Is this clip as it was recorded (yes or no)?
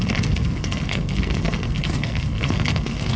no